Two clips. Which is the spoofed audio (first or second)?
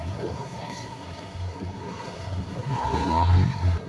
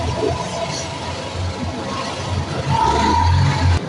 first